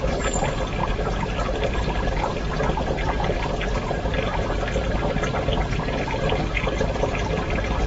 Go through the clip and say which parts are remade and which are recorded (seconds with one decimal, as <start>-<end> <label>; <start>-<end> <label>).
0.0-7.9 recorded